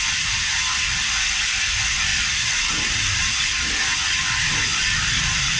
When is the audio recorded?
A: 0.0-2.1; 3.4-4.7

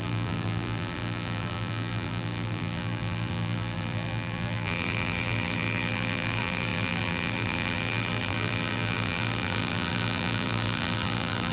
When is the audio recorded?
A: none

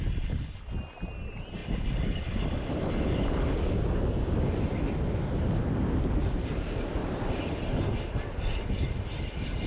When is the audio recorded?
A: 0.0-1.6; 2.9-7.0; 7.6-8.1; 8.7-9.7

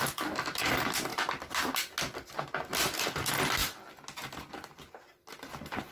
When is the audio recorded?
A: 0.0-5.9

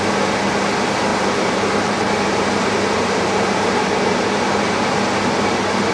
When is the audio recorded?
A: 0.0-1.1; 4.6-5.9

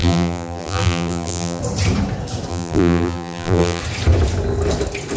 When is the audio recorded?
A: 1.6-2.5; 3.8-5.2

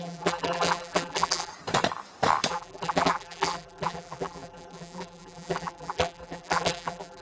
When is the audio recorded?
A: 1.5-2.5

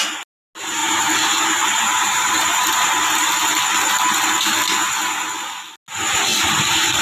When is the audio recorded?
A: 0.0-0.8; 3.3-6.3